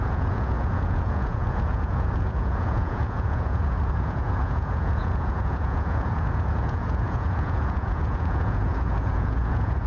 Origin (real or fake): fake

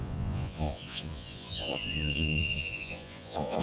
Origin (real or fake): fake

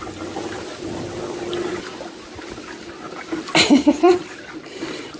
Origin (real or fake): real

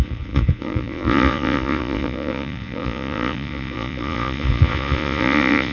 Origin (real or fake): fake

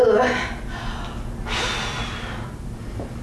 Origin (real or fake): real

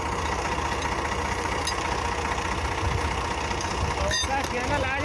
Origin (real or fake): real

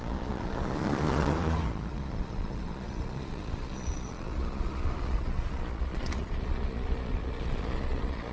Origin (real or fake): fake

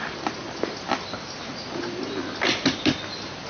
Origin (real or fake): real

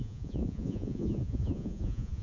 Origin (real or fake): fake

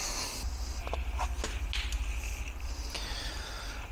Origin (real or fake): real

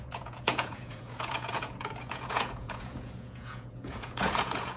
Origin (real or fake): fake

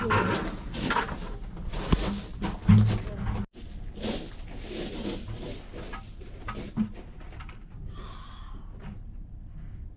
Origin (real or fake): real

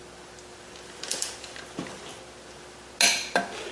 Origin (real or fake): real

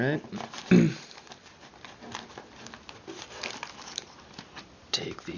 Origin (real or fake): real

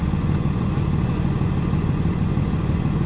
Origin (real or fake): fake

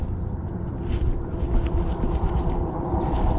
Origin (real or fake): real